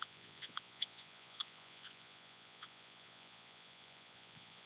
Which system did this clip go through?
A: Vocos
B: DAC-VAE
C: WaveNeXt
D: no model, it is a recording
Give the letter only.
A